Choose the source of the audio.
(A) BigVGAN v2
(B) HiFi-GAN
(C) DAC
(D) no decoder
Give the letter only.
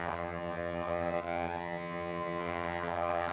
B